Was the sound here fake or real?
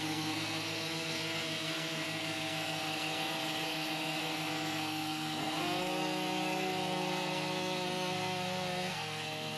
fake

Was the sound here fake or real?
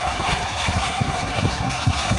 fake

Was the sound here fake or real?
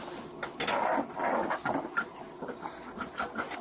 real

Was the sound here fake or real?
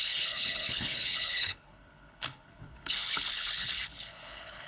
fake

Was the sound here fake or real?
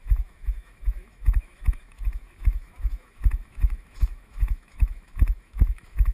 fake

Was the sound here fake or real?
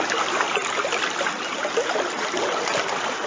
fake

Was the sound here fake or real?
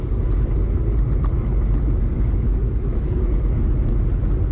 real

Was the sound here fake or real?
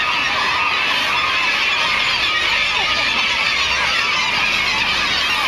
real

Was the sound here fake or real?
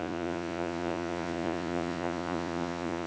fake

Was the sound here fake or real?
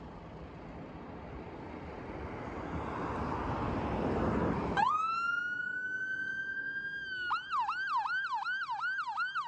real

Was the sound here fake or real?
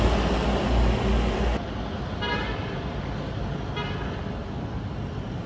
real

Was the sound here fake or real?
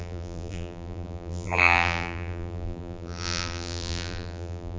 fake